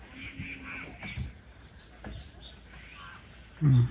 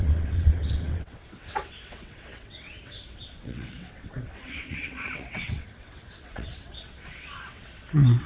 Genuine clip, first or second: first